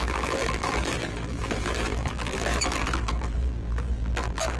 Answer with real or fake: fake